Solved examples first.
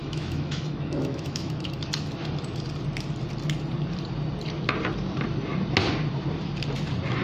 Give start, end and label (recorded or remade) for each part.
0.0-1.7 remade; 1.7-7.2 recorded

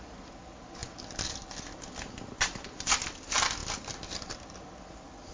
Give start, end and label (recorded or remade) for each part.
0.0-5.3 recorded

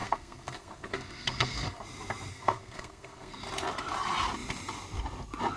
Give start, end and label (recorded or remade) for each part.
0.0-1.8 remade; 1.8-2.3 recorded; 2.3-3.4 remade; 3.4-5.6 recorded

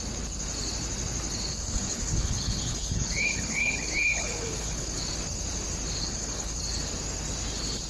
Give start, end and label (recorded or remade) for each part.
0.0-1.5 recorded; 1.5-5.0 remade; 5.0-6.0 recorded; 6.0-6.6 remade; 6.6-7.9 recorded

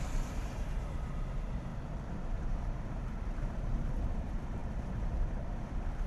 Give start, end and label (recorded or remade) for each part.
0.0-6.1 remade

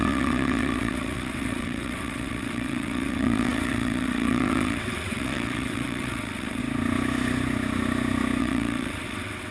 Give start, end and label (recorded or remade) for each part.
0.0-6.6 remade; 6.6-8.4 recorded; 8.4-9.5 remade

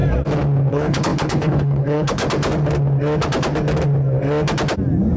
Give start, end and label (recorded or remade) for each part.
0.0-0.7 recorded; 0.7-2.2 remade; 2.2-5.2 recorded